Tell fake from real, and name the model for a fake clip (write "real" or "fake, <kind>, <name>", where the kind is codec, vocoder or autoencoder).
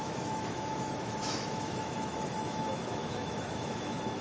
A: fake, autoencoder, DAC-VAE